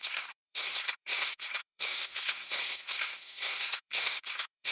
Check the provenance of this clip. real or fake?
fake